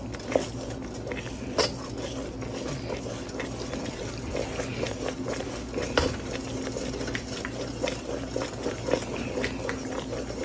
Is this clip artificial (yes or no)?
no